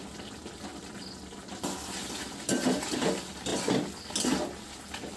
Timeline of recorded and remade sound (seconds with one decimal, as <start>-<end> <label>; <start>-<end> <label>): 0.0-5.2 recorded